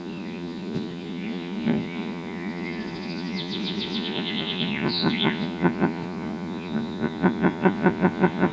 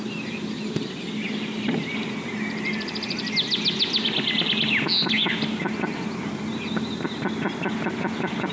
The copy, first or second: first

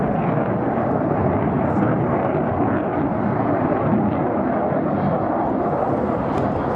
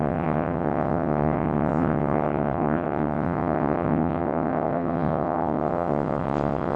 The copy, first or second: second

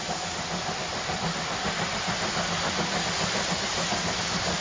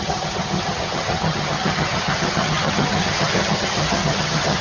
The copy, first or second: second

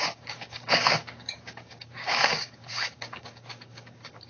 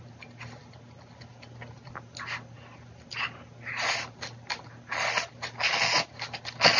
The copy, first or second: first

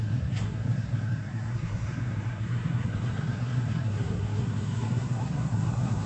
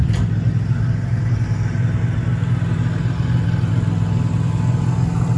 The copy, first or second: first